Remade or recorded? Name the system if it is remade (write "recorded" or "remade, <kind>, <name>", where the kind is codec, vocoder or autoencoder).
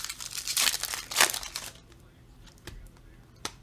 remade, vocoder, BigVGAN v2